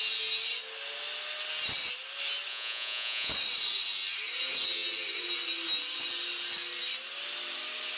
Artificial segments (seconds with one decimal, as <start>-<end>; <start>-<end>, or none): 2.5-3.3